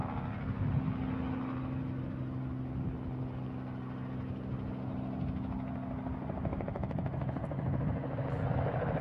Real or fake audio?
real